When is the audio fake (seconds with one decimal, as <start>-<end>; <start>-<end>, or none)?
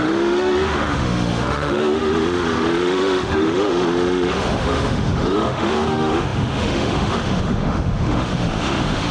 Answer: 0.0-9.1